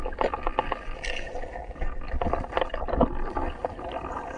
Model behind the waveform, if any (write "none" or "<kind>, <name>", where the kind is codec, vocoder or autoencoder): none